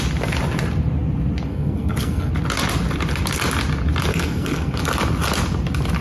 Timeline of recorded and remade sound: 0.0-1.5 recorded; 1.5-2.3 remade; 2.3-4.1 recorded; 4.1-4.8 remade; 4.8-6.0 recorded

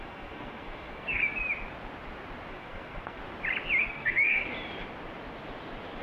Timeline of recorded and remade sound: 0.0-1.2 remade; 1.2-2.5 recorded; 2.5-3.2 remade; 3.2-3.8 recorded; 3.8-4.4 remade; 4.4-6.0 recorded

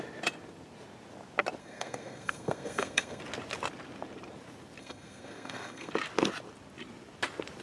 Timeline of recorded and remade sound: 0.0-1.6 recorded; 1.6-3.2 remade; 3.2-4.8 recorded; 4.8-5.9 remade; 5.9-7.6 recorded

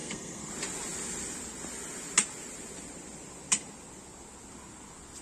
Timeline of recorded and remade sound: 0.0-0.5 remade; 0.5-5.2 recorded

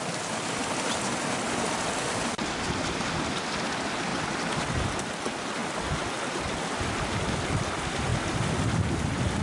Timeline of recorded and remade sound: 0.0-9.4 recorded